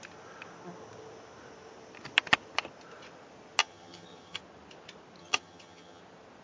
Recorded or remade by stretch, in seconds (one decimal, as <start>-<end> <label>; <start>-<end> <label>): 0.0-3.6 recorded; 3.6-4.4 remade; 4.4-5.2 recorded; 5.2-6.0 remade; 6.0-6.4 recorded